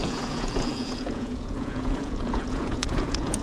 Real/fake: fake